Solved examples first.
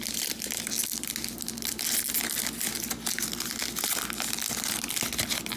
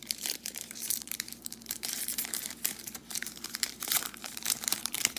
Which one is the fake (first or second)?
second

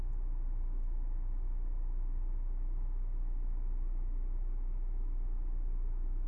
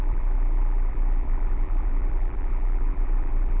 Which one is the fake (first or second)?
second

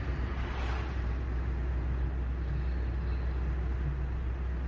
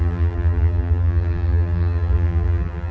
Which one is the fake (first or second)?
second